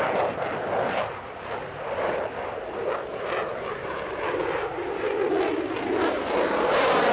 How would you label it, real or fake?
real